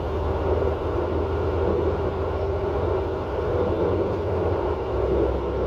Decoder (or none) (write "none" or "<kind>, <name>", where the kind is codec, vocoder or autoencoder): none